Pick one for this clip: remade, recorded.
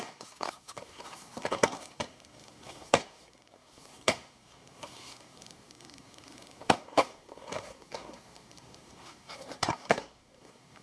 remade